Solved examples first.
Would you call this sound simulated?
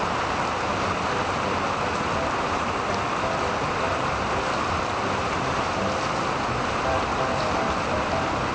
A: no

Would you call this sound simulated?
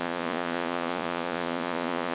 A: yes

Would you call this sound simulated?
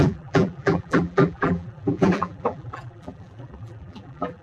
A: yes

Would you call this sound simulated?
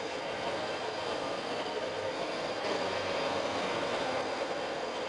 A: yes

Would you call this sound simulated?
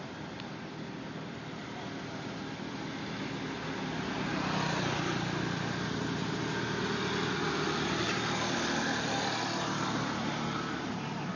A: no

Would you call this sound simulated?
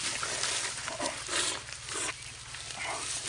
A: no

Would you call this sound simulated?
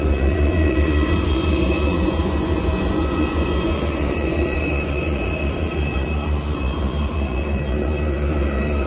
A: yes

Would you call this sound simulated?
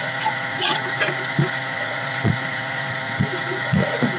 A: yes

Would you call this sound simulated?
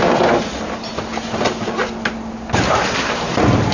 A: no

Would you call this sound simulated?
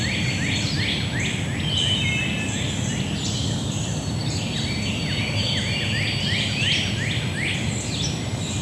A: no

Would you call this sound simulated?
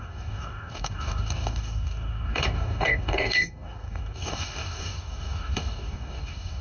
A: yes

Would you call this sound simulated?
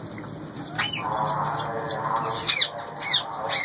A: no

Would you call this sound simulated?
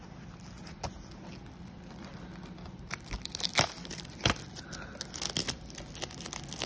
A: no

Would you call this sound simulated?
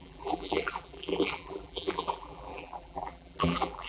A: yes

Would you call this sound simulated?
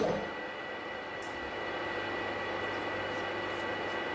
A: no